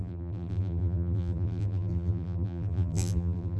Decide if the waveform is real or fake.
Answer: fake